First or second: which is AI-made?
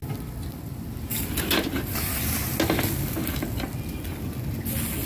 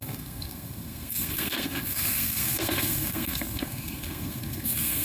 second